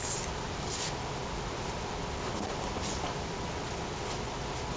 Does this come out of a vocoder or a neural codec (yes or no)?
no